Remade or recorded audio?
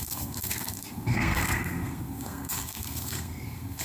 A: remade